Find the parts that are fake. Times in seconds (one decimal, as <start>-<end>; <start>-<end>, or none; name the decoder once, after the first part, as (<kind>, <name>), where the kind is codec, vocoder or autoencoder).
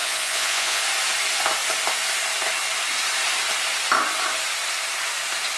0.0-0.8 (vocoder, Vocos)